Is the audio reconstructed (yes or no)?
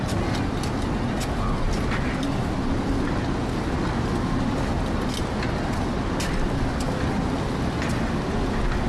no